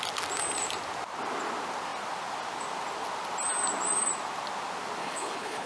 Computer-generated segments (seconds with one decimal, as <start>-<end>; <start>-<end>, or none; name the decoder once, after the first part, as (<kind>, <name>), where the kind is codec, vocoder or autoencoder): 5.0-5.7 (codec, HILCodec)